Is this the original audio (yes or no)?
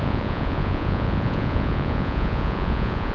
no